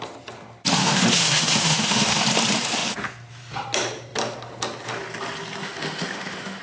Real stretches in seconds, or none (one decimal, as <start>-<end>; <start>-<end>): 0.0-0.8; 2.2-5.6